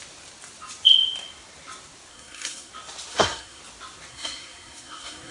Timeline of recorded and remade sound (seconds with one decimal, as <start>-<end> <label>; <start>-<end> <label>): 0.0-2.1 recorded; 2.1-2.7 remade; 2.7-3.1 recorded; 3.1-3.6 remade; 3.6-4.1 recorded; 4.1-5.3 remade